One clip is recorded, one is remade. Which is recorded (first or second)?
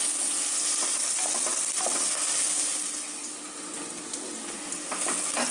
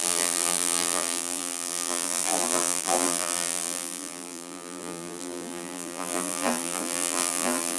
first